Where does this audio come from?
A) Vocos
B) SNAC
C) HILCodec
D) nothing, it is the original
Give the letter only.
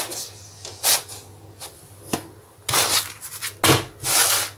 D